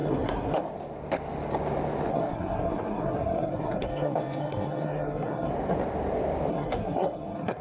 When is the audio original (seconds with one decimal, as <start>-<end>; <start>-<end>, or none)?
0.6-2.1; 5.5-6.5